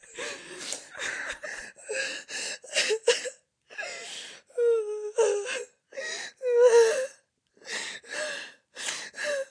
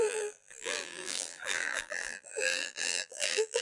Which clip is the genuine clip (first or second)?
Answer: first